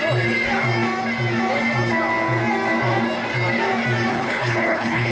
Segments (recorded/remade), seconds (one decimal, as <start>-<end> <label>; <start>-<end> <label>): 0.0-4.1 recorded; 4.1-5.1 remade